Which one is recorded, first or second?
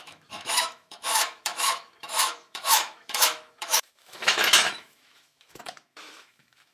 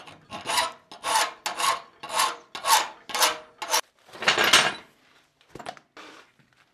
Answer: second